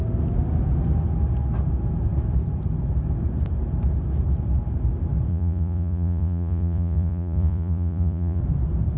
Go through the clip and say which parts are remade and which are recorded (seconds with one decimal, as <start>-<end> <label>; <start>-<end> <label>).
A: 0.0-5.3 recorded; 5.3-8.4 remade; 8.4-9.0 recorded